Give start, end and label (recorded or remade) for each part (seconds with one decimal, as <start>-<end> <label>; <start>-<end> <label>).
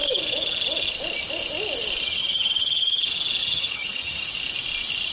0.0-2.2 recorded; 2.2-3.0 remade; 3.0-3.4 recorded; 3.4-4.3 remade; 4.3-5.1 recorded